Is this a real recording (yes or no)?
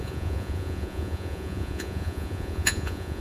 no